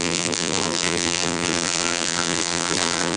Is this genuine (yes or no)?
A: no